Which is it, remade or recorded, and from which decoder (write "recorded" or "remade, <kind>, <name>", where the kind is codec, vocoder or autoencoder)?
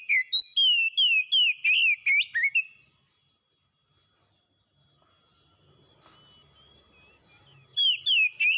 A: recorded